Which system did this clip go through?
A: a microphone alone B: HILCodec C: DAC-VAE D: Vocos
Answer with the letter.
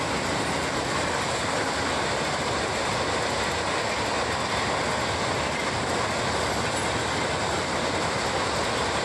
A